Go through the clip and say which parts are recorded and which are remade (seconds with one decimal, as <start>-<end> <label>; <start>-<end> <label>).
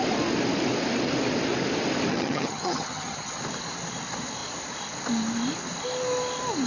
0.0-2.1 recorded; 2.1-3.4 remade; 3.4-6.7 recorded